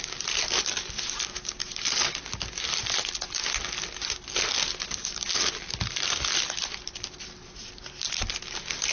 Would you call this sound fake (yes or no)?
no